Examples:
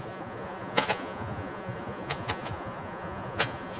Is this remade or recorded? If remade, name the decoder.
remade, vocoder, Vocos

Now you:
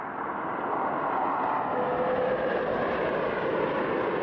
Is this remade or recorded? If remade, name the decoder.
recorded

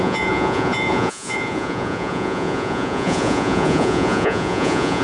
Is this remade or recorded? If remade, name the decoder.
remade, vocoder, Vocos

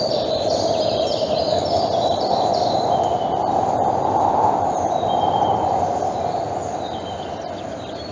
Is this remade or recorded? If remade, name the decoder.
recorded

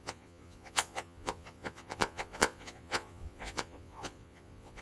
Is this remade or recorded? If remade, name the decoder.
remade, vocoder, Vocos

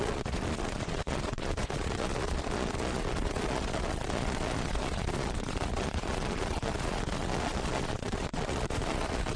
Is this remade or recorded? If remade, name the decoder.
remade, vocoder, Vocos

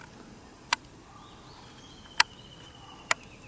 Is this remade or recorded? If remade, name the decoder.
recorded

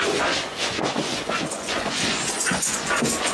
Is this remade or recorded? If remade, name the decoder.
remade, vocoder, Vocos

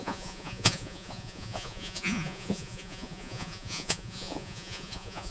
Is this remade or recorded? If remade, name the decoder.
remade, vocoder, Vocos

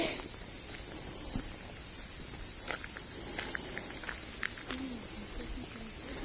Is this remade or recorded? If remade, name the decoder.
recorded